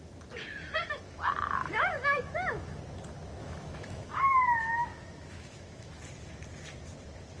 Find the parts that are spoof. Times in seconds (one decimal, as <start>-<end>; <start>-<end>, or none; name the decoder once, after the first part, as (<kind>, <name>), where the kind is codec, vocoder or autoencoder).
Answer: 1.6-2.8 (autoencoder, DAC-VAE); 3.4-4.2; 4.9-5.9